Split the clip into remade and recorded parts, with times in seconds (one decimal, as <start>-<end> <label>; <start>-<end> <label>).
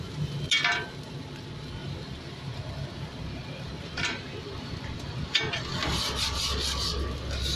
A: 0.0-1.8 recorded; 1.8-5.4 remade; 5.4-7.6 recorded